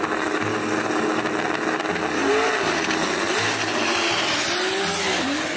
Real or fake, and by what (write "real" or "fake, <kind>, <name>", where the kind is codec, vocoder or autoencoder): real